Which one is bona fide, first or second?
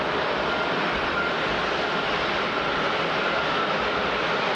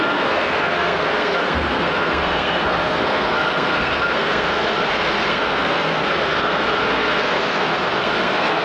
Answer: first